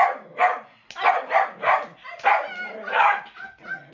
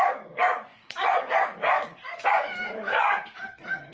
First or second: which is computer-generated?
second